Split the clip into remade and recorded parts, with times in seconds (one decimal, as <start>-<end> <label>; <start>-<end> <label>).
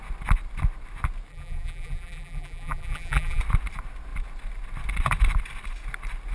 0.0-1.3 recorded; 1.3-3.4 remade; 3.4-6.3 recorded